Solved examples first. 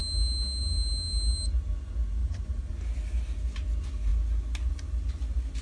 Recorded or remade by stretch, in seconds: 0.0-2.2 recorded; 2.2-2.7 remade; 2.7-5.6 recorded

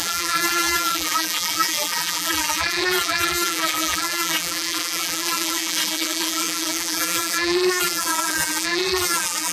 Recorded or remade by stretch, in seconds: 0.0-9.5 remade

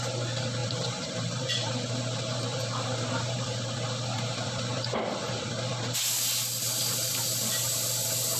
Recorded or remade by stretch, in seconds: 0.0-0.6 recorded; 0.6-3.7 remade; 3.7-8.4 recorded

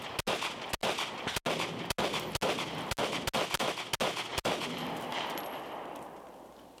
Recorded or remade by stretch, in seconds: 0.0-6.8 recorded

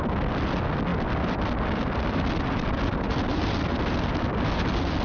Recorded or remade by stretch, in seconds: 0.0-0.9 recorded; 0.9-3.9 remade; 3.9-5.0 recorded

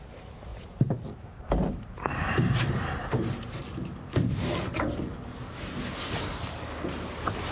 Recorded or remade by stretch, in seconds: 0.0-0.5 recorded; 0.5-3.6 remade; 3.6-7.5 recorded

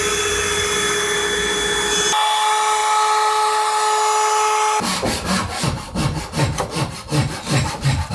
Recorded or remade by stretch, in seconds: 0.0-8.1 recorded

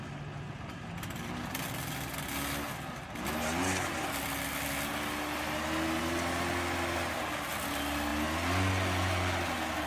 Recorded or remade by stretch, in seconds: 0.0-9.9 recorded